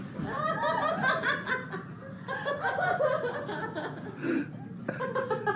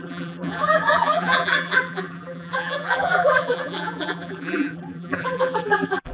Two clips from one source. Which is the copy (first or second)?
second